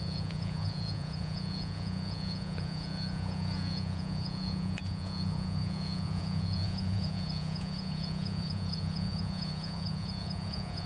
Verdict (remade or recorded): remade